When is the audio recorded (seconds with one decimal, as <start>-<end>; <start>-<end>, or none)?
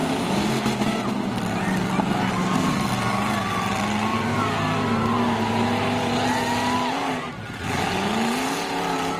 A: 0.0-9.2